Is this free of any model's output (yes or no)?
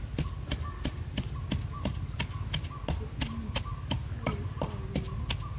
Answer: yes